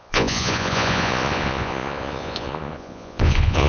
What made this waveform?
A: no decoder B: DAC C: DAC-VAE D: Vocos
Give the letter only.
D